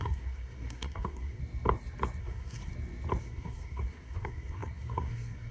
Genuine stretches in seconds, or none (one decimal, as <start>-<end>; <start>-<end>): 1.4-2.2; 2.7-3.2